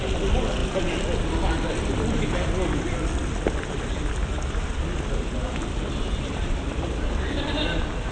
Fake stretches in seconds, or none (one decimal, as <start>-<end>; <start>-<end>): none